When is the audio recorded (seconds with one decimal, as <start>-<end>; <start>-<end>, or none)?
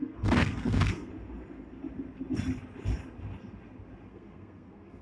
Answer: 1.1-4.1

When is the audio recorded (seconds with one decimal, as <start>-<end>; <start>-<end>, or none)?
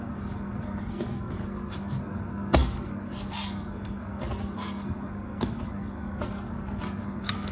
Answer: none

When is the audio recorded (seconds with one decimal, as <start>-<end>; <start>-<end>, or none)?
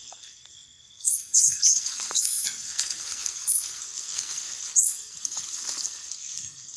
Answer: none